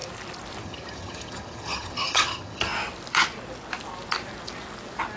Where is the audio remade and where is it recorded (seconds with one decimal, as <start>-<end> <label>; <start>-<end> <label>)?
0.0-0.6 recorded; 0.6-2.7 remade; 2.7-5.2 recorded